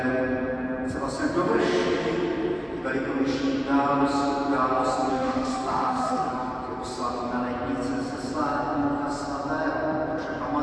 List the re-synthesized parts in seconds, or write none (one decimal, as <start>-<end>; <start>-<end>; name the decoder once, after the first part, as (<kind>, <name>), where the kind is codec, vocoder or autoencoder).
5.1-6.3 (autoencoder, DAC-VAE)